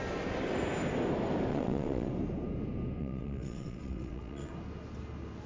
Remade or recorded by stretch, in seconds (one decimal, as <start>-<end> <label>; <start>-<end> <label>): 0.0-1.5 recorded; 1.5-2.1 remade; 2.1-3.0 recorded; 3.0-4.5 remade; 4.5-5.5 recorded